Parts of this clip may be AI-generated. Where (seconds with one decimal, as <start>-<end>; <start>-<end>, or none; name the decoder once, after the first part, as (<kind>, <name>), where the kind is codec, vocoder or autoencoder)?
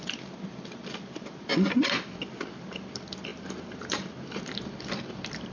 1.5-2.1 (vocoder, BigVGAN v2); 3.3-4.1